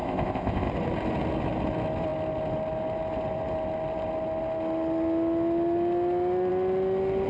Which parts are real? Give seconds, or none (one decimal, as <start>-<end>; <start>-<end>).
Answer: 0.7-7.3